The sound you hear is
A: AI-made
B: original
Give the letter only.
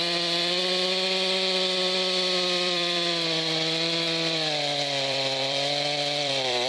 A